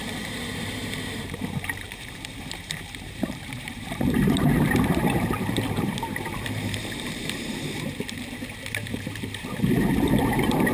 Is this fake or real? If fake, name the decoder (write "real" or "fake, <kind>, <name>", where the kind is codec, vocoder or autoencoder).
fake, vocoder, BigVGAN v2